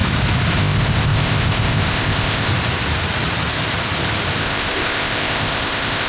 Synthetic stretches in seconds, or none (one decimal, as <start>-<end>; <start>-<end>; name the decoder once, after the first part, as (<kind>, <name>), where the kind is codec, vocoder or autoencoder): 0.6-2.5 (codec, ZipCodec); 4.4-6.1